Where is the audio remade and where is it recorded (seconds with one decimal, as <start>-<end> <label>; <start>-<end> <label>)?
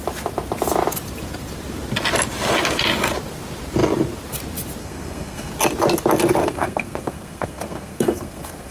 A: 0.0-4.8 recorded; 4.8-5.5 remade; 5.5-6.4 recorded; 6.4-8.7 remade